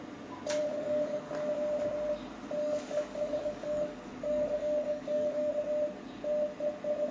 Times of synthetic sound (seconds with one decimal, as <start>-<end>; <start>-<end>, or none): 0.6-1.3; 2.6-5.5

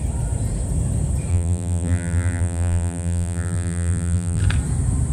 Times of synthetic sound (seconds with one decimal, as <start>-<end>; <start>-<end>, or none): 1.3-4.4

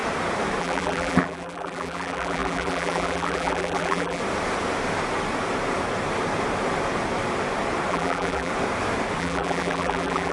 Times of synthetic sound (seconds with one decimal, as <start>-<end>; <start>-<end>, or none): 0.6-4.2; 7.9-8.5; 9.2-10.3

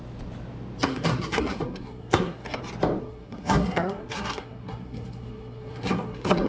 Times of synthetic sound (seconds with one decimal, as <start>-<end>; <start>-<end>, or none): 0.8-2.6; 3.0-6.5

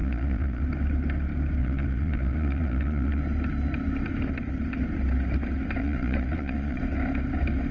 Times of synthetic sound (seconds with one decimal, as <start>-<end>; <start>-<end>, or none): 0.0-0.6; 1.6-3.2; 5.8-6.8

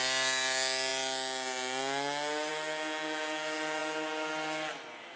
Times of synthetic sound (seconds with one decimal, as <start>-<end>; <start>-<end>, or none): none

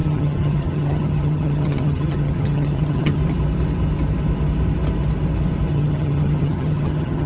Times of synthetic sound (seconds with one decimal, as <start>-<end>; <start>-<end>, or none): 0.0-3.2; 5.7-7.3

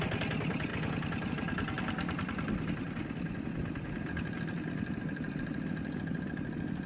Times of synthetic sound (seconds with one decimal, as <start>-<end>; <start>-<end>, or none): none